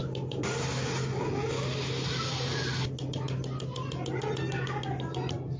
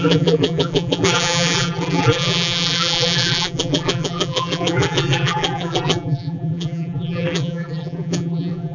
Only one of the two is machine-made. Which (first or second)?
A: second